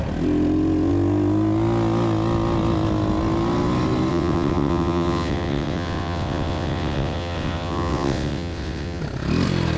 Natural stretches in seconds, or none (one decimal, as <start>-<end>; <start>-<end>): 0.0-4.1; 9.0-9.8